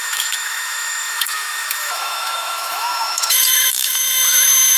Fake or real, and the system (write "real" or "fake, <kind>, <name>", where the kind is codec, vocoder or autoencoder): fake, autoencoder, DAC-VAE